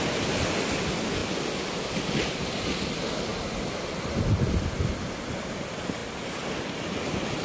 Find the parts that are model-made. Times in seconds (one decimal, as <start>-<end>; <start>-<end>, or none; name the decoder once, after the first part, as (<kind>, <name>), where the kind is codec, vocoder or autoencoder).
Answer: none